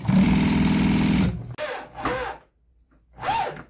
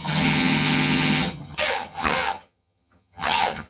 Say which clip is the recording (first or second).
first